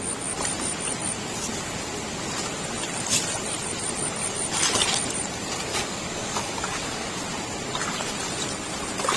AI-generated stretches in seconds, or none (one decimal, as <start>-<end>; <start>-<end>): 5.7-7.2